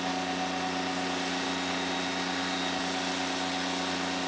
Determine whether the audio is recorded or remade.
recorded